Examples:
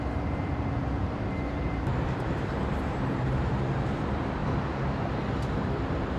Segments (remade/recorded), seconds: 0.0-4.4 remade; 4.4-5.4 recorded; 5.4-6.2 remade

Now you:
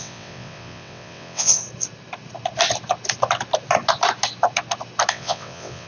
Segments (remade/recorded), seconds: 0.0-1.6 remade; 1.6-5.1 recorded; 5.1-5.9 remade